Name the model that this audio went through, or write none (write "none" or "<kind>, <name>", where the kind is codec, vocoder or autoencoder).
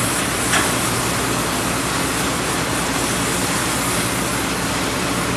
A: none